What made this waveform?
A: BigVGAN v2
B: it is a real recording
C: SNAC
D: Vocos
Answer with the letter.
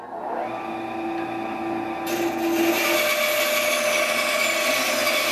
B